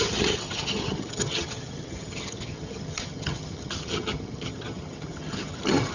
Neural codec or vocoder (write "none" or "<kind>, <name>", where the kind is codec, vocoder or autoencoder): vocoder, HiFi-GAN